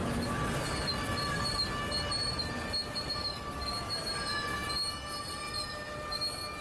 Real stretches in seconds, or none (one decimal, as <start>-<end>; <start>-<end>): 0.0-6.6

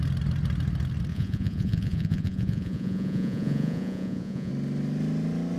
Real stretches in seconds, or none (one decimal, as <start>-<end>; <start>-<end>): 0.0-1.1; 4.5-5.6

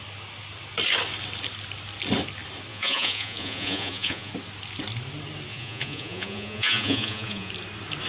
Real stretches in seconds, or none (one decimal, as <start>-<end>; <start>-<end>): 0.0-2.7; 4.3-5.5; 7.5-8.1